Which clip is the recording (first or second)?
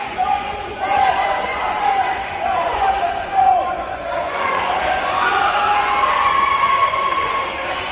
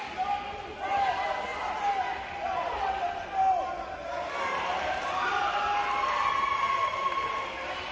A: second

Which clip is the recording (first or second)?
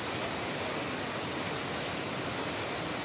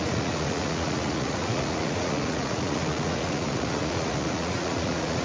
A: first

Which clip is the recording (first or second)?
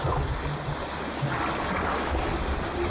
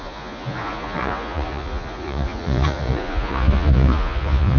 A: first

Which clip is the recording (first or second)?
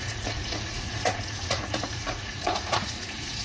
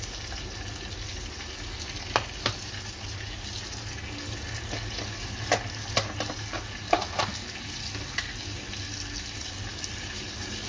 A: second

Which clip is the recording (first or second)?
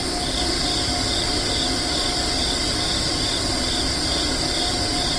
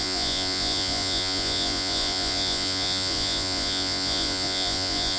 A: first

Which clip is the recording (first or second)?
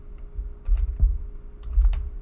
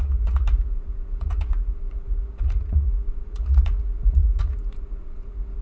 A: first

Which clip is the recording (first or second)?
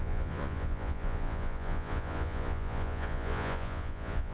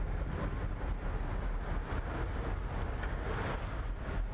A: second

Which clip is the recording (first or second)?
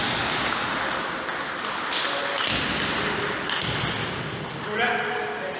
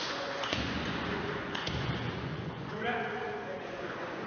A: first